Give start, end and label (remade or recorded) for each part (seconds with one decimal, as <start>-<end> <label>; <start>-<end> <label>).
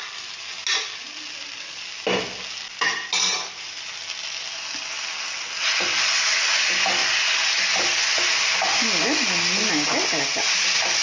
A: 0.0-11.0 recorded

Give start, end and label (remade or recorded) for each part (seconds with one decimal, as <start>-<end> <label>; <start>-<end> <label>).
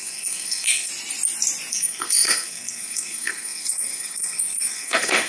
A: 0.0-0.9 remade; 0.9-1.7 recorded; 1.7-5.3 remade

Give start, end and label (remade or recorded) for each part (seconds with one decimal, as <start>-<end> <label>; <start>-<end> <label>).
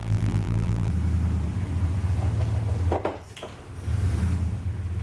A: 0.0-0.9 remade; 0.9-5.0 recorded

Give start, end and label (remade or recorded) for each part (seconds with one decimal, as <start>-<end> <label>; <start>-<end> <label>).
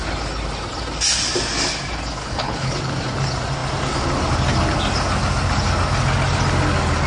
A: 0.0-2.2 recorded; 2.2-2.8 remade; 2.8-7.1 recorded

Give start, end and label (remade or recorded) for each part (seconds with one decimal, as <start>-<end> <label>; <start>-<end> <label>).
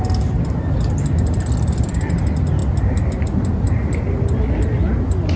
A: 0.0-5.4 recorded